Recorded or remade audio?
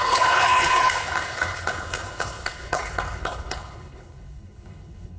remade